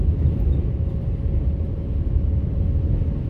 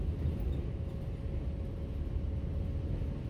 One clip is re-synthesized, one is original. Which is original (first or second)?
second